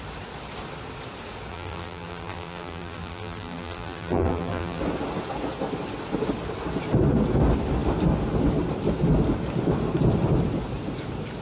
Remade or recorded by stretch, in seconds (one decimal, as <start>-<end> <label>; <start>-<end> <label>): 0.0-1.5 recorded; 1.5-4.8 remade; 4.8-11.4 recorded